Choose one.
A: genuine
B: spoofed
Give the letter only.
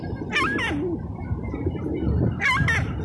A